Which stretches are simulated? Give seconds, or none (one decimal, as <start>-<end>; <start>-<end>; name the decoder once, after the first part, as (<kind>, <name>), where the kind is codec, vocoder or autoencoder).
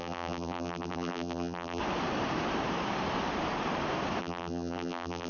0.0-1.8 (vocoder, BigVGAN v2); 4.2-5.3